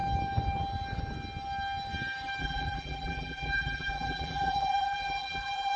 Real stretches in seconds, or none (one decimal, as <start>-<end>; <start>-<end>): 0.0-2.4